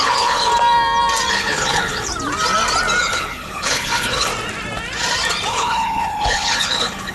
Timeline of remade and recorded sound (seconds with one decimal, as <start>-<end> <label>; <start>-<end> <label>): 0.0-0.5 remade; 0.5-1.3 recorded; 1.3-2.1 remade; 2.1-3.0 recorded; 3.0-4.3 remade; 4.3-5.5 recorded; 5.5-7.1 remade

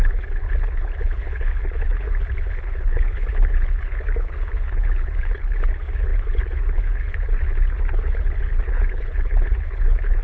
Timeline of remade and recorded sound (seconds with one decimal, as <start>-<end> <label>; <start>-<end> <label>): 0.0-10.2 remade

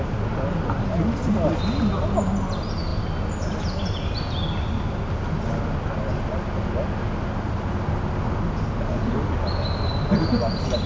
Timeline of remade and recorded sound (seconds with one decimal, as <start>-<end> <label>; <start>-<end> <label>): 0.0-10.9 recorded

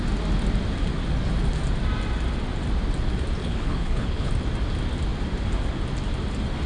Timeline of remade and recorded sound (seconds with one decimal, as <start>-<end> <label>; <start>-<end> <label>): 0.0-3.4 recorded; 3.4-4.3 remade; 4.3-6.7 recorded

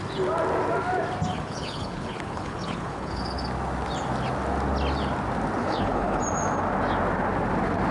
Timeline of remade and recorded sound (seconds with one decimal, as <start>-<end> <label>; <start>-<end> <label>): 0.0-1.3 recorded; 1.3-3.2 remade; 3.2-5.6 recorded; 5.6-6.2 remade; 6.2-7.9 recorded

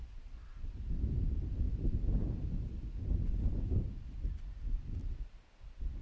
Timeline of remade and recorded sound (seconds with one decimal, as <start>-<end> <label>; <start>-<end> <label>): 0.0-6.0 recorded

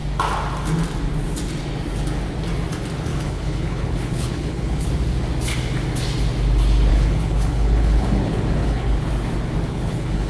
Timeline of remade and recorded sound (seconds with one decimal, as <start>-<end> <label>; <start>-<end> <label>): 0.0-3.1 recorded; 3.1-4.9 remade; 4.9-6.9 recorded; 6.9-9.1 remade; 9.1-9.7 recorded; 9.7-10.3 remade